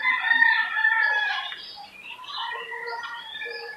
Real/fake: fake